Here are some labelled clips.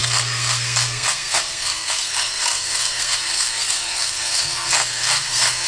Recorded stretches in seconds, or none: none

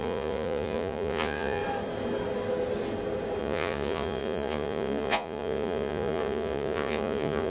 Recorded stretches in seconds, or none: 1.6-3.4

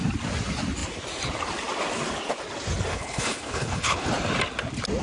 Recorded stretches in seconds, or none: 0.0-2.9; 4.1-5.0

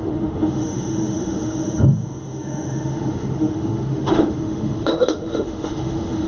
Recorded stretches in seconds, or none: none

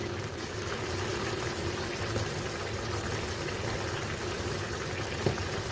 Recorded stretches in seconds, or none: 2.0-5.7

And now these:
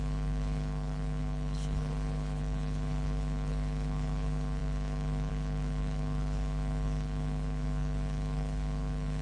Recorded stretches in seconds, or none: none

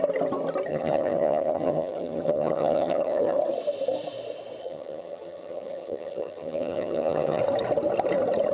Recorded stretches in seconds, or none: 0.0-0.7; 3.4-4.6; 7.4-8.5

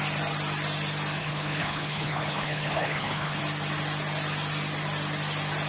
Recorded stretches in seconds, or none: 0.0-1.2; 3.4-5.7